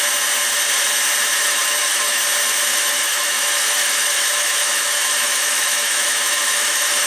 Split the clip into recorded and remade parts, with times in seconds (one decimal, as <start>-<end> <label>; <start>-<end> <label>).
0.0-1.4 recorded; 1.4-2.2 remade; 2.2-2.7 recorded; 2.7-7.1 remade